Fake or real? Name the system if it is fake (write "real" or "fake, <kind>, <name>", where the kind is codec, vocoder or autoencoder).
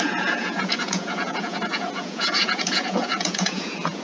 fake, vocoder, Vocos